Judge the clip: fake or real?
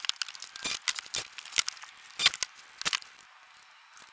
real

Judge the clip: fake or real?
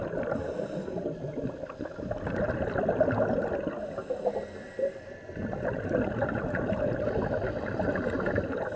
real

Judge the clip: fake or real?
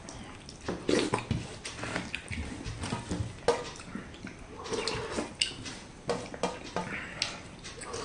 real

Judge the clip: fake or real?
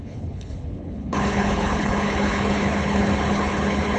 fake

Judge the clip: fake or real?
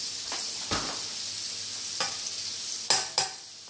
real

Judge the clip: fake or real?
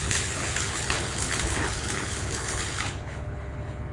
fake